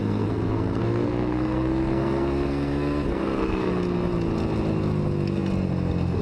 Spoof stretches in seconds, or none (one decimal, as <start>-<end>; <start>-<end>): 0.0-3.7